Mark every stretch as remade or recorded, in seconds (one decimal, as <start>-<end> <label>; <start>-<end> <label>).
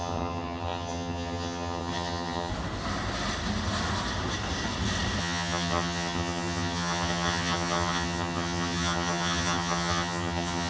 0.0-2.5 remade; 2.5-5.2 recorded; 5.2-10.7 remade